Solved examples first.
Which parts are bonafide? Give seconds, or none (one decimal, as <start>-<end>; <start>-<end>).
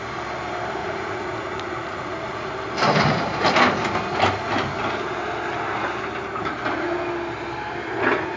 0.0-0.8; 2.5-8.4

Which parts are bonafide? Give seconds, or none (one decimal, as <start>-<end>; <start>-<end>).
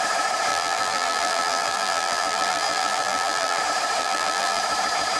0.0-0.5; 3.6-4.0; 4.6-5.2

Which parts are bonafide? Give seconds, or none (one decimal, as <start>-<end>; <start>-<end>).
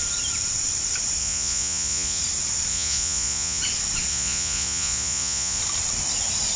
0.0-1.2; 2.2-2.7; 3.6-4.1; 5.6-6.6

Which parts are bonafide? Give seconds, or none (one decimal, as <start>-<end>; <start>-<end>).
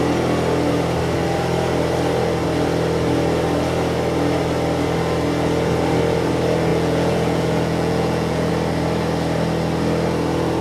0.0-6.7; 8.5-10.6